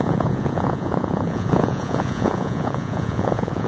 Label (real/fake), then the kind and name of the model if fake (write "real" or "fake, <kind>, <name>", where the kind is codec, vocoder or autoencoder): fake, vocoder, Vocos